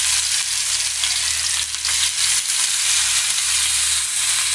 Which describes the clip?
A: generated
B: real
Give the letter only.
B